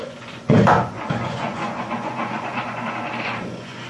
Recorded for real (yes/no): no